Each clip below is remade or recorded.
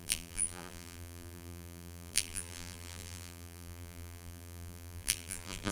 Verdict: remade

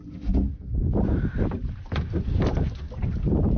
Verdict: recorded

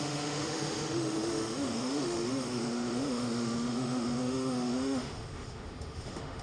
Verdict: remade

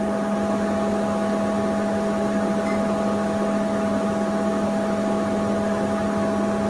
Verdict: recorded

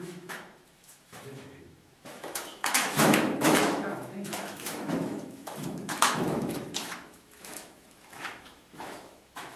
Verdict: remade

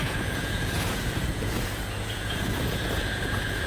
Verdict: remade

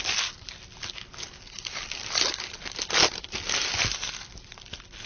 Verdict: recorded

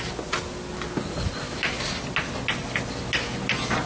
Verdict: recorded